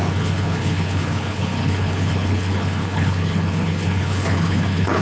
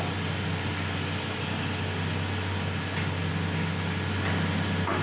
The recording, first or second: second